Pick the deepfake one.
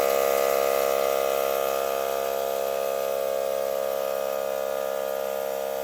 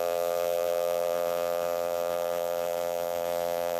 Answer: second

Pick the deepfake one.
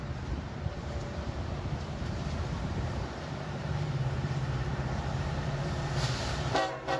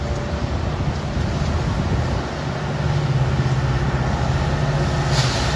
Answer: first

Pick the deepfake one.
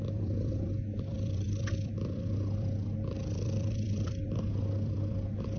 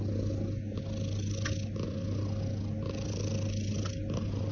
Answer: first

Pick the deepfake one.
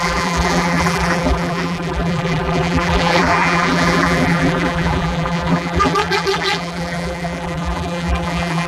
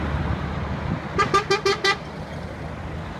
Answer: first